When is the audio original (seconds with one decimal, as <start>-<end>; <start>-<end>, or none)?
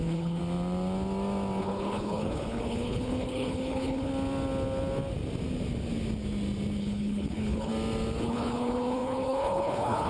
0.4-1.6; 4.1-6.8; 7.7-8.2